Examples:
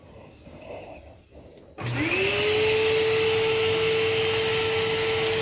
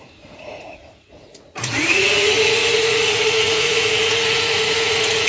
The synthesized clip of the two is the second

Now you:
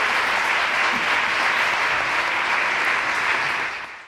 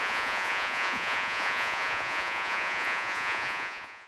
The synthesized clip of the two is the second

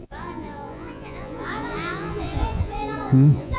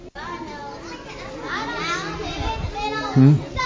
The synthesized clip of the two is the first